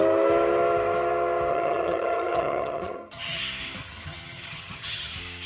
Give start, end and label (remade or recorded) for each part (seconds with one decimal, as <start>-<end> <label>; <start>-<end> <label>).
0.0-1.5 recorded; 1.5-3.4 remade; 3.4-3.8 recorded; 3.8-5.1 remade; 5.1-5.5 recorded